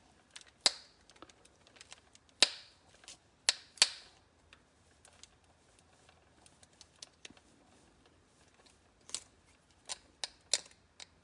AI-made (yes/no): no